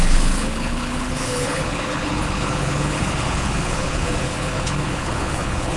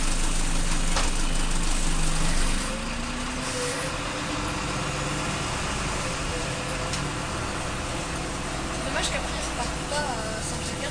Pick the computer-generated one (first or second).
first